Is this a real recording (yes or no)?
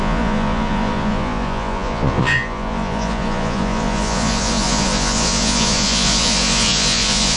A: no